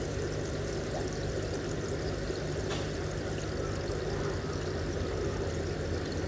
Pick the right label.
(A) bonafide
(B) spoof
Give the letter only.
A